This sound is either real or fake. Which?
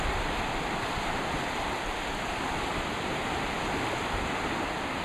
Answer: real